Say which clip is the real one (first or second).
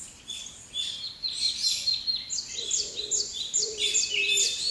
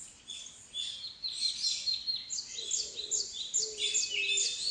second